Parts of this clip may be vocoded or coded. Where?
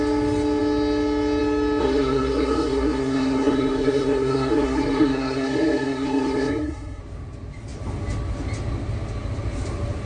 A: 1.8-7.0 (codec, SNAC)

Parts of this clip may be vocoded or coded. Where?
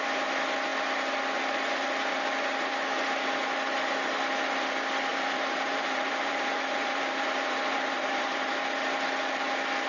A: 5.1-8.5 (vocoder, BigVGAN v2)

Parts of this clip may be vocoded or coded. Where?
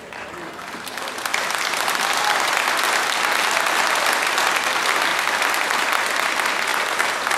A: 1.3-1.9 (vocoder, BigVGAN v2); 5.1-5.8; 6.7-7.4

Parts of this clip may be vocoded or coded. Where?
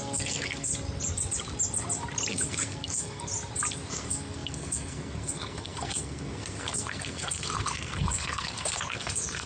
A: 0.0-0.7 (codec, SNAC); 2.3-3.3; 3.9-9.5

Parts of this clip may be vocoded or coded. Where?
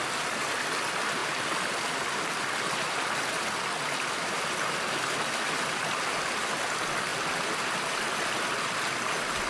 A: none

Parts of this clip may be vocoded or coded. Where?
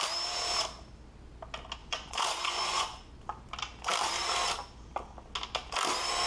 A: 1.8-3.1 (vocoder, Vocos)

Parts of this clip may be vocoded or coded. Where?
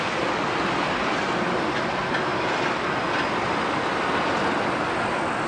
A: none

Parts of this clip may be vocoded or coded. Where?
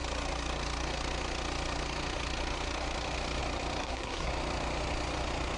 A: 3.8-4.3 (codec, SNAC)